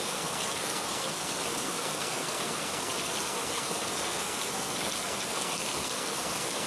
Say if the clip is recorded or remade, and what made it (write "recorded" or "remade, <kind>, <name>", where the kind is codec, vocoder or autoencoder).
remade, codec, SNAC